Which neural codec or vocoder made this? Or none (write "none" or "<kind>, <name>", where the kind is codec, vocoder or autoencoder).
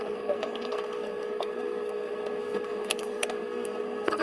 codec, SNAC